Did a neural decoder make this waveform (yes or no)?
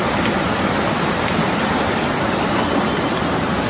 no